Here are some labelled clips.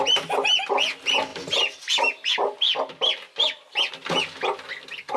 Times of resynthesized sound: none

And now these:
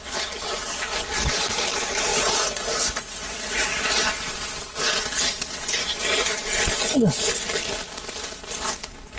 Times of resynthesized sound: 2.1-4.3 (vocoder, Vocos)

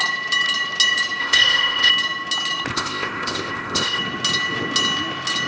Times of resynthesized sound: 1.2-1.9 (codec, ZipCodec); 2.7-4.0